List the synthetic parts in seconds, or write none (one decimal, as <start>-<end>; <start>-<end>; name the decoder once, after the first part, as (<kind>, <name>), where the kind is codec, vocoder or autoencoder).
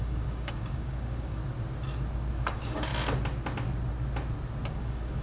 0.0-1.4 (codec, DAC); 2.3-2.9; 4.7-5.2